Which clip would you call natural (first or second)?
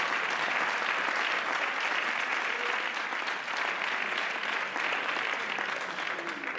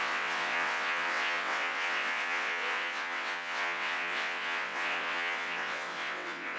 first